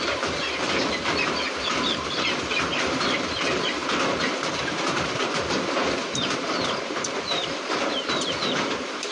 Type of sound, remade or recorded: remade